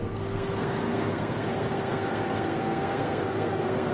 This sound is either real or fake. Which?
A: fake